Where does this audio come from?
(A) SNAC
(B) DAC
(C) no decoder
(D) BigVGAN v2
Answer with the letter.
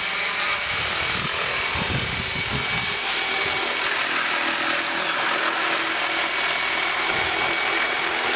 C